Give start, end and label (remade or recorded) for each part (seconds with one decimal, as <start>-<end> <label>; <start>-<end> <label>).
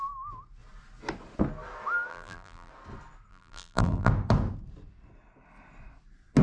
0.0-2.1 recorded; 2.1-2.7 remade; 2.7-3.3 recorded; 3.3-4.1 remade; 4.1-6.4 recorded